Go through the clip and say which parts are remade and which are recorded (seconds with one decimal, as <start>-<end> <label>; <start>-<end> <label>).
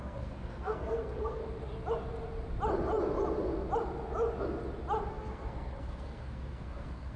0.0-1.4 remade; 1.4-5.1 recorded; 5.1-7.2 remade